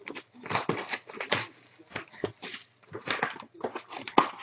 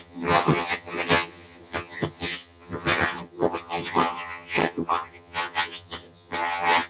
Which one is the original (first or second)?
first